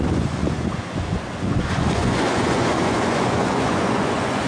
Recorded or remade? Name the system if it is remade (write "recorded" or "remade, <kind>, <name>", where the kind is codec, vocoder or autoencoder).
remade, vocoder, Vocos